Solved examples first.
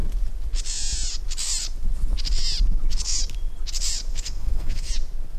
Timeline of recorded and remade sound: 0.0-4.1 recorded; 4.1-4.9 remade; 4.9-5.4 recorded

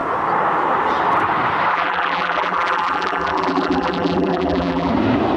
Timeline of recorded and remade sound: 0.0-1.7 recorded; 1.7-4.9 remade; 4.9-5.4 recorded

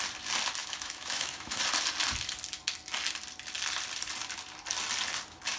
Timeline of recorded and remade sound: 0.0-0.6 recorded; 0.6-1.6 remade; 1.6-5.6 recorded